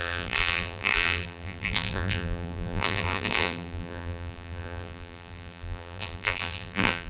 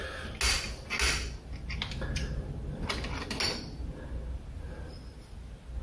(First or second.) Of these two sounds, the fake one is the first